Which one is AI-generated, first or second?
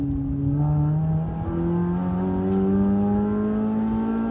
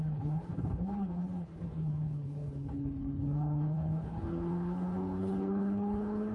second